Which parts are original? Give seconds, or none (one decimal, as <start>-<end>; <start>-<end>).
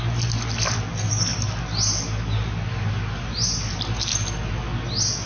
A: 0.0-5.3